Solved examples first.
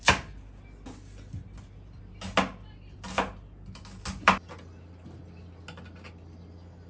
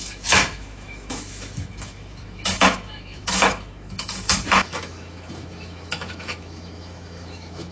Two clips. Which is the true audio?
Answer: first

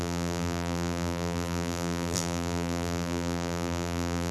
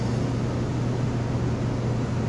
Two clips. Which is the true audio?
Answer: second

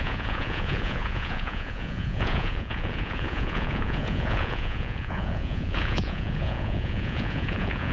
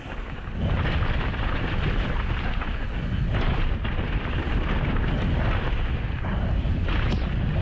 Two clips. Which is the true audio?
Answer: second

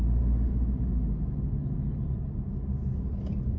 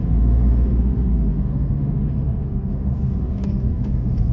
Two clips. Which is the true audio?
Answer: first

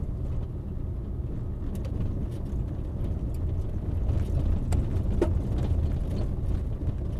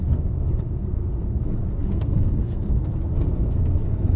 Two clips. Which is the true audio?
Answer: first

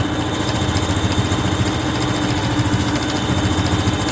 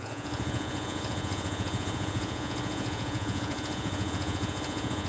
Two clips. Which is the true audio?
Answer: first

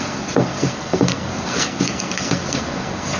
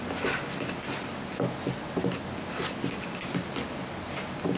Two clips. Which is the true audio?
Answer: second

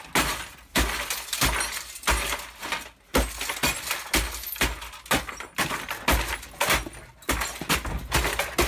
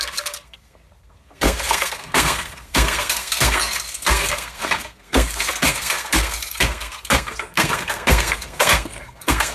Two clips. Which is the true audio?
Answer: first